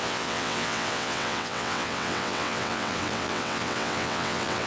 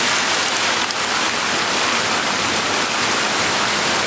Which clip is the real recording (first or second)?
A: second